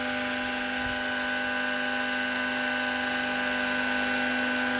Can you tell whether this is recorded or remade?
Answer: recorded